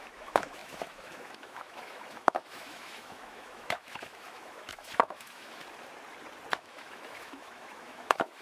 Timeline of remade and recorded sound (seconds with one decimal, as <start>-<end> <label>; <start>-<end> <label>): 0.0-5.6 remade; 5.6-6.6 recorded; 6.6-8.4 remade